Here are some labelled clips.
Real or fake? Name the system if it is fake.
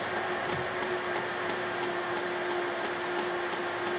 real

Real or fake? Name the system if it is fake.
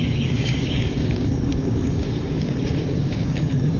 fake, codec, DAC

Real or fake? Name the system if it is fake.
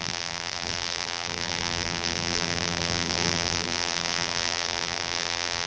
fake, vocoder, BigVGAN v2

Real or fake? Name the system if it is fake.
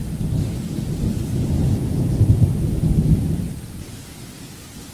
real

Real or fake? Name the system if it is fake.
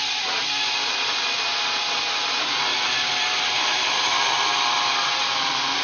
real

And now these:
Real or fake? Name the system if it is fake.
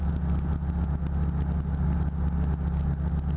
real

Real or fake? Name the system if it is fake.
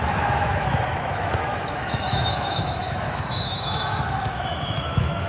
fake, autoencoder, DAC-VAE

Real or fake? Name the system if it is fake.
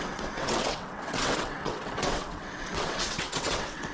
fake, vocoder, WaveNeXt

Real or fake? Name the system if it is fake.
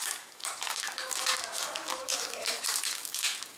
fake, codec, DAC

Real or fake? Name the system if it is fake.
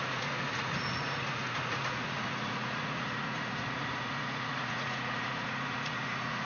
fake, vocoder, Vocos